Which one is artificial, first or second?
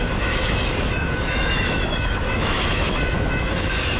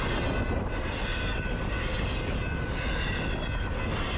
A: first